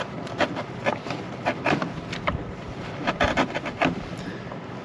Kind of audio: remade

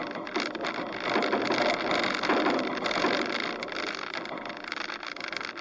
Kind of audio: recorded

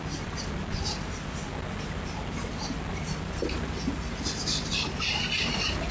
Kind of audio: recorded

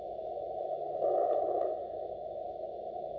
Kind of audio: remade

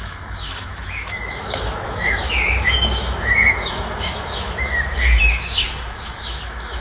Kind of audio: remade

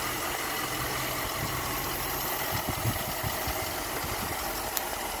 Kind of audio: recorded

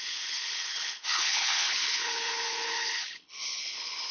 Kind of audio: remade